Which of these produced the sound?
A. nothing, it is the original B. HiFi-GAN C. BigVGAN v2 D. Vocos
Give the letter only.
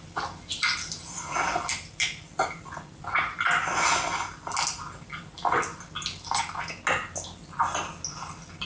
A